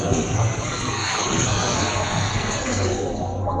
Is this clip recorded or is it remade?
remade